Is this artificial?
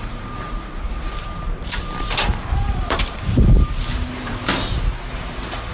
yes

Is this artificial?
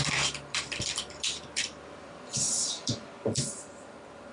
yes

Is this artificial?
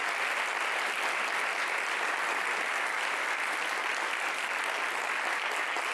no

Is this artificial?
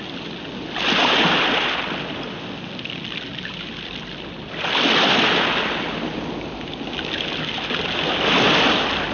no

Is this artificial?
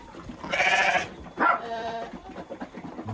yes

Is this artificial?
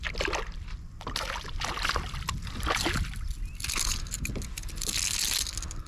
no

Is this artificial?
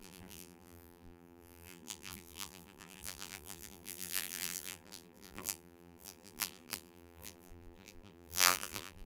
yes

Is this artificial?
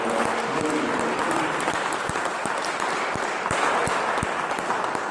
yes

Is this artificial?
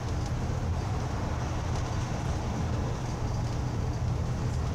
no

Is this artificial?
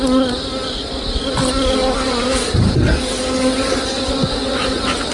no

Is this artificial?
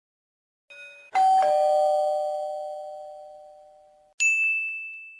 no